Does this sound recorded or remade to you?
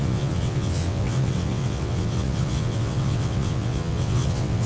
remade